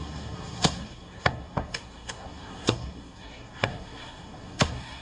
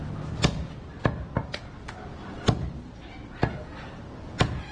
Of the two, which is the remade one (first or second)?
first